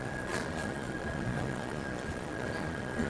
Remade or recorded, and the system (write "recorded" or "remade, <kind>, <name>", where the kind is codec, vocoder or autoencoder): remade, vocoder, Vocos